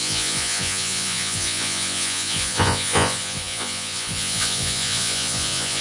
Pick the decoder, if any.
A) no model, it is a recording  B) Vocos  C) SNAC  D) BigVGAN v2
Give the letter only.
B